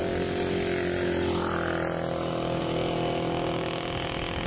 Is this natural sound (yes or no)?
yes